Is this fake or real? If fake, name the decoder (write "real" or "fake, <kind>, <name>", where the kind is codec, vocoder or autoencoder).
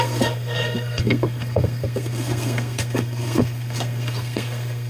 fake, codec, SNAC